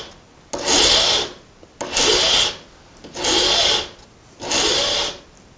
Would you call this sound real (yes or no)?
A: yes